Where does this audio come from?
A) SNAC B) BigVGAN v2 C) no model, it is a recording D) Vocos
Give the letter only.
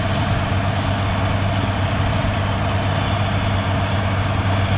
C